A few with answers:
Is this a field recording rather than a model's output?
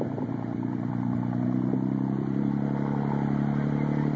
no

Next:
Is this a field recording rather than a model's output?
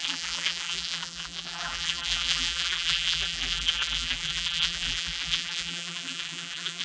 no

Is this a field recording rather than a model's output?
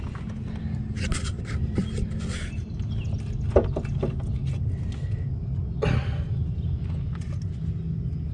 yes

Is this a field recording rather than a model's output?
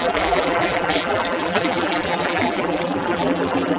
no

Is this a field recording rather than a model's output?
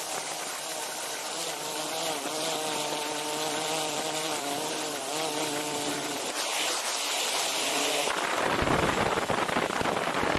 no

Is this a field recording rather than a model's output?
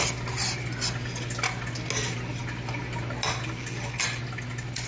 yes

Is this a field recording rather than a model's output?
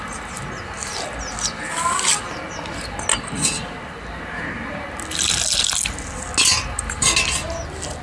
yes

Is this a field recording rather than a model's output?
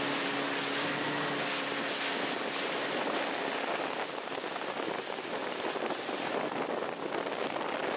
yes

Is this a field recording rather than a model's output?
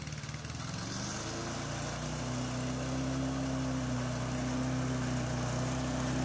yes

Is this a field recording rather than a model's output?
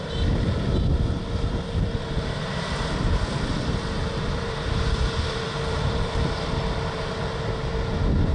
no